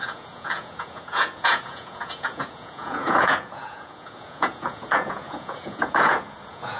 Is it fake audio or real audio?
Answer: fake